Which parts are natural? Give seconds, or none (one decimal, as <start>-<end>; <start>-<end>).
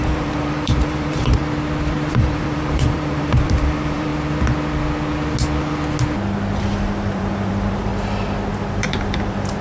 1.4-2.1; 4.1-6.6; 7.9-8.5